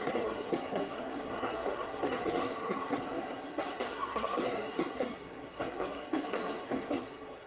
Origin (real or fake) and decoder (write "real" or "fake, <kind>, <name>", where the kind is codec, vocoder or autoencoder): fake, codec, SNAC